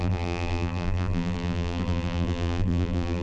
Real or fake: fake